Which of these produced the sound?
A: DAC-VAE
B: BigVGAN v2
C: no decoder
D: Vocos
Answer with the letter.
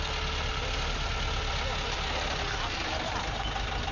C